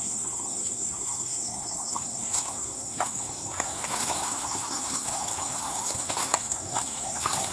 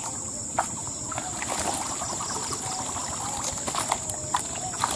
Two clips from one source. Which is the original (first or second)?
second